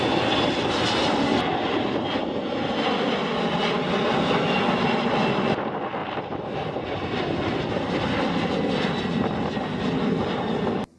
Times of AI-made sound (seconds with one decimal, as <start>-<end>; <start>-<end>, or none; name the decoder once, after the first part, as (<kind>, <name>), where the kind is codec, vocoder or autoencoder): none